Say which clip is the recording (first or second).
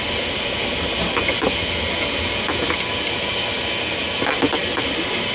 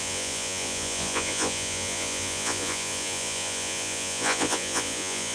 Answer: first